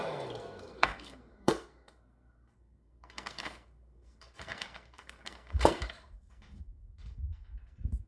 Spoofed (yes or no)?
yes